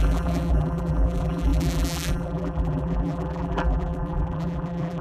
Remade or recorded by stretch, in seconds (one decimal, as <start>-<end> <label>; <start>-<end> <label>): 0.0-5.0 remade